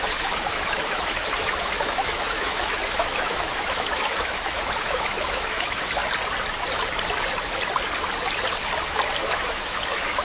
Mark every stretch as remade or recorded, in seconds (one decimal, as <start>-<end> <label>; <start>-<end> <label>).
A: 0.0-6.0 remade; 6.0-9.3 recorded; 9.3-10.2 remade